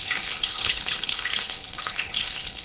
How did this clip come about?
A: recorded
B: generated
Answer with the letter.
B